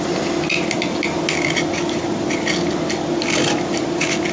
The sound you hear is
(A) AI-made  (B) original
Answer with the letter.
B